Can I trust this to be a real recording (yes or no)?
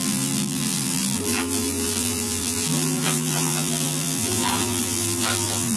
no